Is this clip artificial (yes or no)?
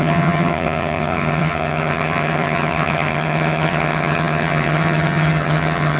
yes